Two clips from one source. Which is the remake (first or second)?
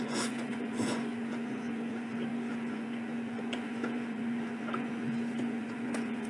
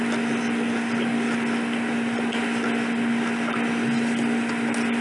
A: first